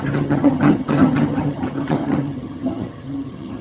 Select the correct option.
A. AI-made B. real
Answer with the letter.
A